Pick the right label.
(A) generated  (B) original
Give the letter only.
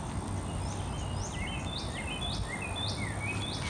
B